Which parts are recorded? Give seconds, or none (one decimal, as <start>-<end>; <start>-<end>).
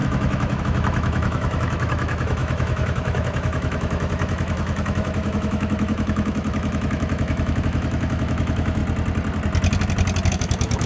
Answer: 8.8-10.3